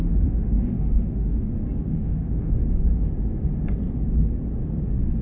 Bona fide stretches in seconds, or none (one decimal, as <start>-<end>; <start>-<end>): 1.5-1.9; 2.5-5.2